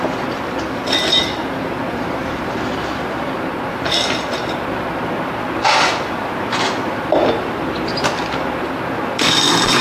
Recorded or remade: remade